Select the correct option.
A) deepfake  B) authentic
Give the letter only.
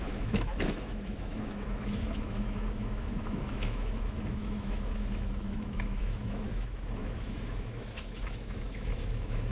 A